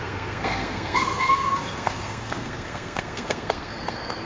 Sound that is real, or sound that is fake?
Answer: fake